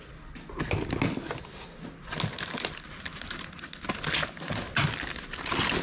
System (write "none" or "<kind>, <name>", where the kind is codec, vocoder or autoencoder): none